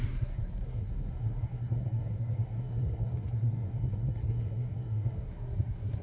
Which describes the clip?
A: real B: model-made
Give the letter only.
B